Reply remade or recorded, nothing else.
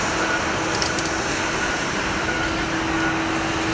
recorded